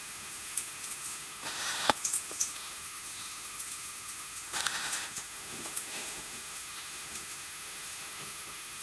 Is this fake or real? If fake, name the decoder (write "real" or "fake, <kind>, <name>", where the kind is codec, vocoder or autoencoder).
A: fake, autoencoder, DAC-VAE